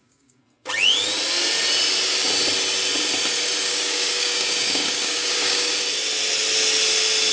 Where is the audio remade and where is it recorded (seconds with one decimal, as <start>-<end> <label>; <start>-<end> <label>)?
0.0-0.4 remade; 0.4-3.6 recorded; 3.6-5.7 remade; 5.7-7.3 recorded